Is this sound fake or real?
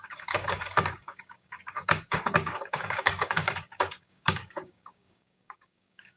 fake